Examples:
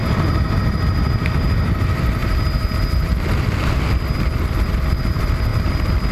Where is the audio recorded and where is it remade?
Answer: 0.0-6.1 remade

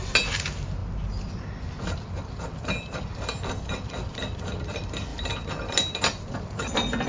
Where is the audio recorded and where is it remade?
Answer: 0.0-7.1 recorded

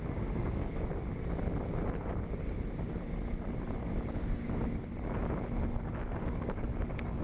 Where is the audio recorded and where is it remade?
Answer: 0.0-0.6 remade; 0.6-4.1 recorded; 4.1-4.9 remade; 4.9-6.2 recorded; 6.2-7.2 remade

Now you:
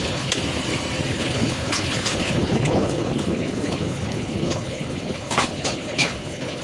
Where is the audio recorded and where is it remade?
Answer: 0.0-0.4 remade; 0.4-1.1 recorded; 1.1-6.6 remade

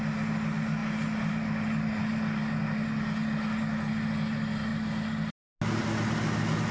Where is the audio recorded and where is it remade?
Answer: 0.0-6.7 recorded

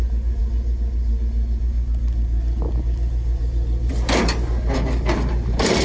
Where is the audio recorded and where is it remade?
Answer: 0.0-5.8 recorded